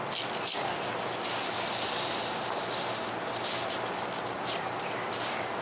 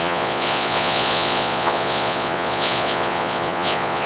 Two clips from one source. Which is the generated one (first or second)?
second